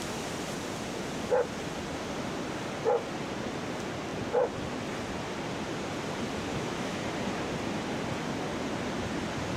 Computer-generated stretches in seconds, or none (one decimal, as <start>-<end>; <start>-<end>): 6.5-7.0